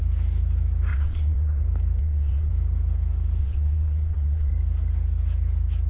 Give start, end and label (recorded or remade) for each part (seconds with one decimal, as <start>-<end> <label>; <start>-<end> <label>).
0.0-0.9 recorded; 0.9-1.6 remade; 1.6-2.0 recorded; 2.0-2.5 remade; 2.5-3.4 recorded; 3.4-4.5 remade; 4.5-5.9 recorded